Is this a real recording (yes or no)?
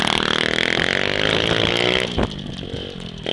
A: yes